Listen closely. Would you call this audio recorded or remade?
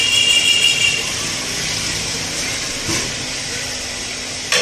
recorded